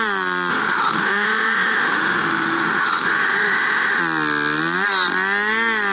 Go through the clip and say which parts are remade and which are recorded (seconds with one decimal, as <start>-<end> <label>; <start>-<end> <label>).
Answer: 0.0-0.5 recorded; 0.5-4.0 remade; 4.0-5.9 recorded